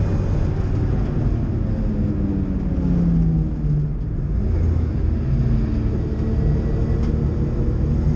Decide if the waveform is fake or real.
real